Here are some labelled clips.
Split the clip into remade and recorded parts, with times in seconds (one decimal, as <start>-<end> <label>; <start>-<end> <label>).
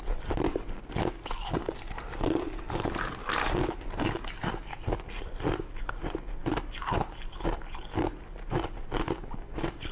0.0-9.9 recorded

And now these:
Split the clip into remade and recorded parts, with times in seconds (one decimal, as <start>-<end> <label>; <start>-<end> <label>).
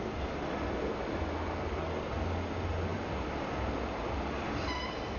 0.0-5.2 recorded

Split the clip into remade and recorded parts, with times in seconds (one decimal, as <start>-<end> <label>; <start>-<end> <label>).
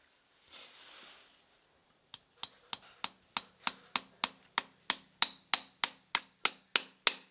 0.0-7.3 recorded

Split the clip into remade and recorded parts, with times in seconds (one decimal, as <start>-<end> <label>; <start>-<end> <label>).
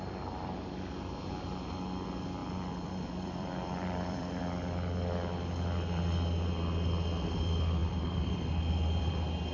0.0-2.4 recorded; 2.4-4.4 remade; 4.4-7.8 recorded; 7.8-9.1 remade; 9.1-9.5 recorded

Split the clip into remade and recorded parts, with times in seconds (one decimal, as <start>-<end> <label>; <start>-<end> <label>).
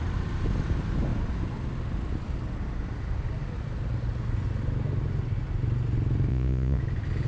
0.0-6.3 recorded; 6.3-6.8 remade; 6.8-7.3 recorded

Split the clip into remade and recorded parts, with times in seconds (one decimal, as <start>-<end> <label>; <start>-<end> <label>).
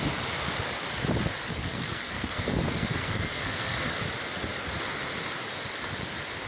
0.0-1.5 recorded; 1.5-4.0 remade; 4.0-6.5 recorded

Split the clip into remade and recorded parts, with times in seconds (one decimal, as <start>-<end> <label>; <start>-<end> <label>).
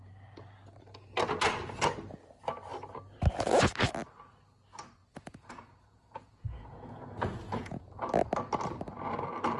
0.0-5.0 recorded; 5.0-7.8 remade; 7.8-9.6 recorded